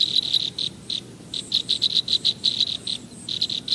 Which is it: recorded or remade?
recorded